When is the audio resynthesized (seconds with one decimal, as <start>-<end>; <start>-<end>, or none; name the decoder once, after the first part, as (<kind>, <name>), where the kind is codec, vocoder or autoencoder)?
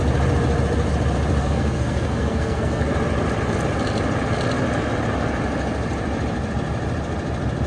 1.4-2.9 (codec, SNAC)